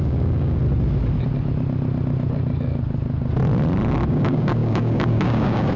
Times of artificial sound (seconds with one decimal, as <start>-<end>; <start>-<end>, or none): 0.0-0.6; 4.1-5.8